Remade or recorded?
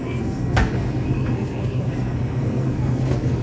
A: remade